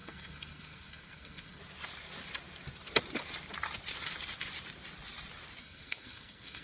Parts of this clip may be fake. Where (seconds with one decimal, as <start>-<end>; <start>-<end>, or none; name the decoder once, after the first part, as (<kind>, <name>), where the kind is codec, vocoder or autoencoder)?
0.0-1.6 (codec, SNAC); 5.6-6.6